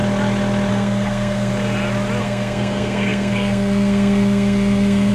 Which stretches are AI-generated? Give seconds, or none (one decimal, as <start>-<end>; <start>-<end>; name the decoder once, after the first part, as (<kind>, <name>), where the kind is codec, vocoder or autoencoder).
0.7-1.5 (codec, SNAC); 2.2-5.1